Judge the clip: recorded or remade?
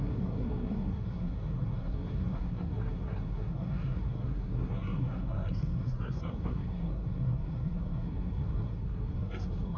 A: remade